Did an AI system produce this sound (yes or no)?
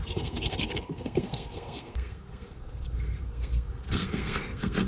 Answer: yes